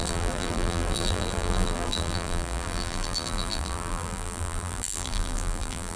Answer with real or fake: fake